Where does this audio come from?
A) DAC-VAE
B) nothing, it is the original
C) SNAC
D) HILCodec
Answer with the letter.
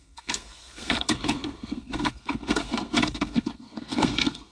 C